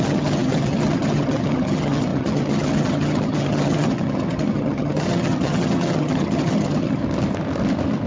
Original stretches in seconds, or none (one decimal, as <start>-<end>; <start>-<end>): 7.0-8.1